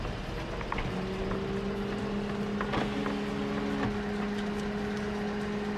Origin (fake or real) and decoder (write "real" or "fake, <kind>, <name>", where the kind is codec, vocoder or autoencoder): real